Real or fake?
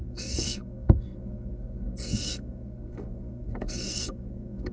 fake